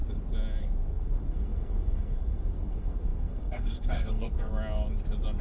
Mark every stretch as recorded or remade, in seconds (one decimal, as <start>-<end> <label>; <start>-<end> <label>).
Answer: 0.0-0.6 recorded; 0.6-4.5 remade; 4.5-5.4 recorded